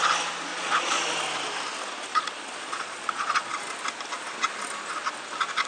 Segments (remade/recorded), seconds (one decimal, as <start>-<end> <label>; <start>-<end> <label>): 0.0-0.5 recorded; 0.5-1.0 remade; 1.0-2.1 recorded; 2.1-3.5 remade; 3.5-5.7 recorded